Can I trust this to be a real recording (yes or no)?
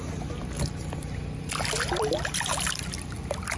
yes